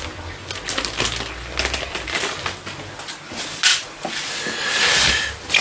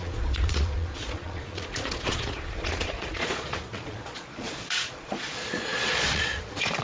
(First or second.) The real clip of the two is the first